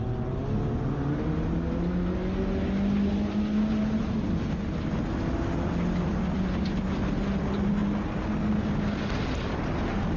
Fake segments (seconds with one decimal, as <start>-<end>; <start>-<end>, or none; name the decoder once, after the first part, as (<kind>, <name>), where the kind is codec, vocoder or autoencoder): none